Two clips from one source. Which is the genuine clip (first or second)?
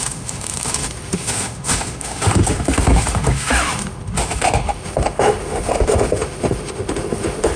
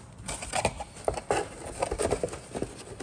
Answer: second